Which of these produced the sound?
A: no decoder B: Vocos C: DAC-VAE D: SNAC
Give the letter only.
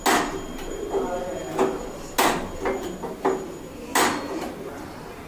A